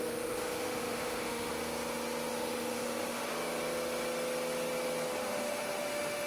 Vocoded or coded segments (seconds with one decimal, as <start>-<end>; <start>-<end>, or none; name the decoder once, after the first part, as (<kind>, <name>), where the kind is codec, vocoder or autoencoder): 0.0-1.5 (autoencoder, DAC-VAE); 2.3-3.3; 5.1-6.3